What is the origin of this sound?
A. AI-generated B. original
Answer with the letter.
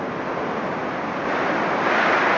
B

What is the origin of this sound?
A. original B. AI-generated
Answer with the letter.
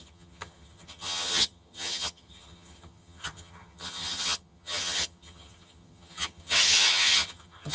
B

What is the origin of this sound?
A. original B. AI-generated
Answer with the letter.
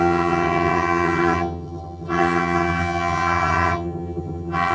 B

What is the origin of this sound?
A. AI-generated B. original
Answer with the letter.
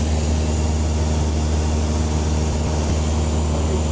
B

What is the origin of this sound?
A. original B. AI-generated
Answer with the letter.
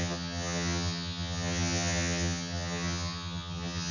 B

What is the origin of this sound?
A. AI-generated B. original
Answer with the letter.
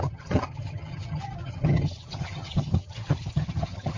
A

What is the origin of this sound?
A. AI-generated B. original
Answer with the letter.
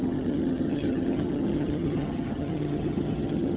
A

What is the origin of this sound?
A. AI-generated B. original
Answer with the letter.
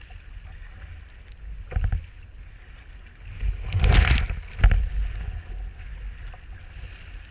B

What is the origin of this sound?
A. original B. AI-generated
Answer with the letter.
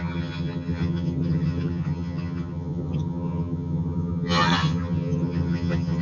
B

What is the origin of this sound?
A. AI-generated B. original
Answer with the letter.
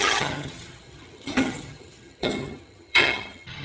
A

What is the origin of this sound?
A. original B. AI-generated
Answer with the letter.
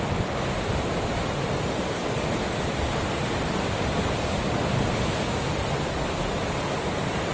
A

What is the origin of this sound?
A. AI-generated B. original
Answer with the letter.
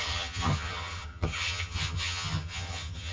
A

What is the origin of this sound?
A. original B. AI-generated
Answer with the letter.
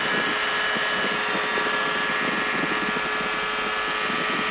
A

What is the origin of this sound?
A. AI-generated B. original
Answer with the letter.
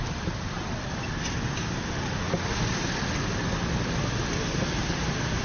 B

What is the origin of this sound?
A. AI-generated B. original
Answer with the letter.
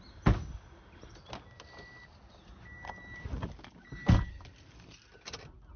B